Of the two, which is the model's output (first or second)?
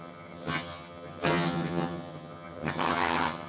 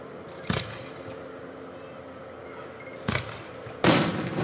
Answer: first